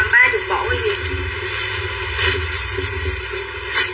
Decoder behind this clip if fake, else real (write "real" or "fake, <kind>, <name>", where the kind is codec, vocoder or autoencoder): real